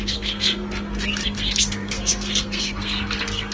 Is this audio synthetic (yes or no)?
yes